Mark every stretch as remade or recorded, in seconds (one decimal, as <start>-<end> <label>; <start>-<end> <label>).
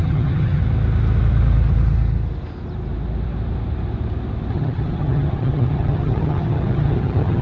0.0-0.6 remade; 0.6-4.5 recorded; 4.5-7.4 remade